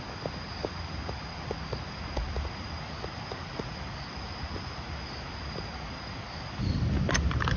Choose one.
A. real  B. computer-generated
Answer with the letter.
A